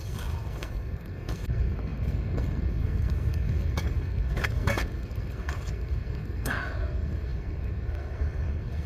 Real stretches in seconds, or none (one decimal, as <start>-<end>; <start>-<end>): none